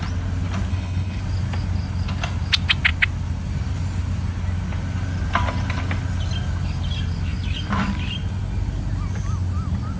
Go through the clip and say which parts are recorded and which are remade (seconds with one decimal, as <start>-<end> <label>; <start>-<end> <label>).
0.0-0.7 recorded; 0.7-1.2 remade; 1.2-10.0 recorded